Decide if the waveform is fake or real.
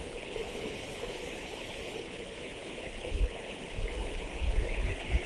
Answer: fake